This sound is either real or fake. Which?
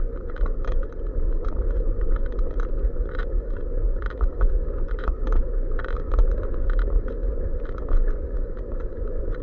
fake